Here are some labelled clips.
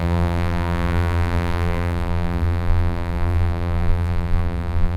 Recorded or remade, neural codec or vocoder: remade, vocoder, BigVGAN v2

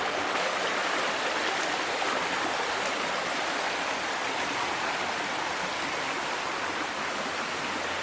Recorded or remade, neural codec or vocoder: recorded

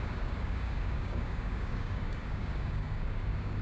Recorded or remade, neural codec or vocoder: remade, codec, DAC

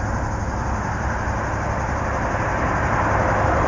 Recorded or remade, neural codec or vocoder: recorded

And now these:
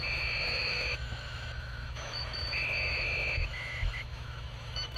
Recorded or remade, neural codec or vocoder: remade, autoencoder, DAC-VAE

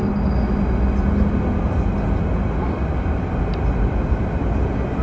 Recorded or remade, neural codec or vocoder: recorded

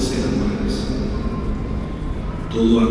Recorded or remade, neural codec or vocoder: recorded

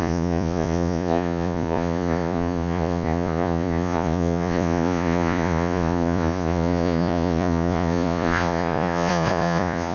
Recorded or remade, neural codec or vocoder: remade, vocoder, Vocos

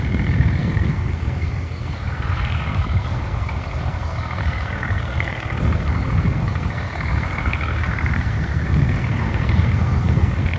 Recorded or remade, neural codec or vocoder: remade, codec, SNAC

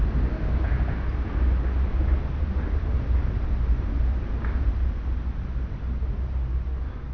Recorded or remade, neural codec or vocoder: recorded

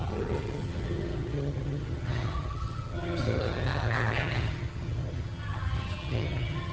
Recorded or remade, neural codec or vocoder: remade, vocoder, HiFi-GAN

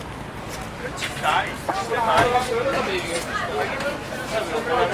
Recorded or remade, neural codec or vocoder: recorded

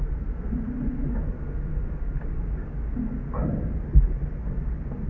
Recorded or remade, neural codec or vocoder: recorded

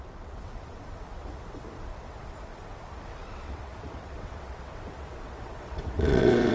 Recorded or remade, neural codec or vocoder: remade, vocoder, WaveNeXt